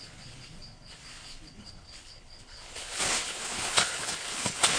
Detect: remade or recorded remade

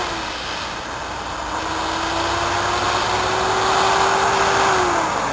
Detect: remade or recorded recorded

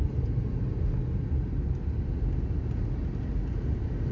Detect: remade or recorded recorded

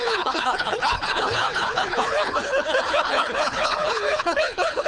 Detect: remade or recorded remade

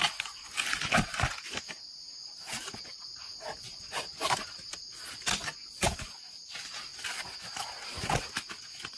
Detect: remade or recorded recorded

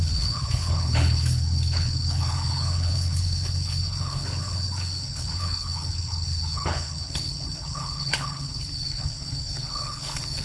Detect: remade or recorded remade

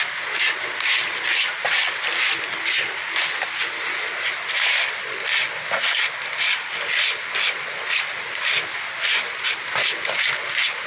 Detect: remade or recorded recorded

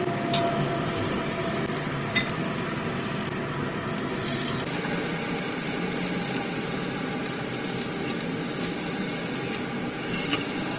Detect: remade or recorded recorded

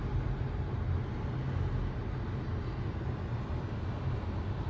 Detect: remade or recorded recorded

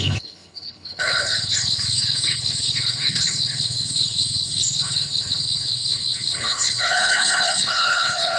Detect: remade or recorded remade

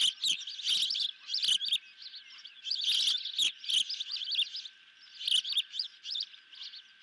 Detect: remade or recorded recorded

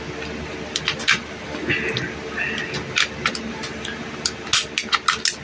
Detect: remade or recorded recorded